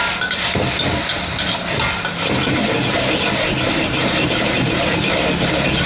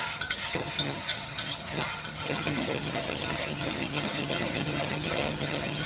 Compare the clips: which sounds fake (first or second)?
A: second